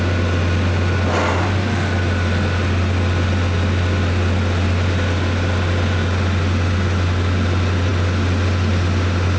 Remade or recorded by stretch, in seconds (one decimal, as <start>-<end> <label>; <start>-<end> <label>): 0.0-9.4 recorded